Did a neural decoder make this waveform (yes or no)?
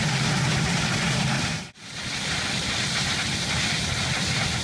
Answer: no